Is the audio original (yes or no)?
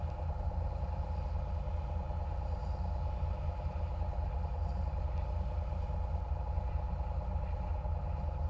yes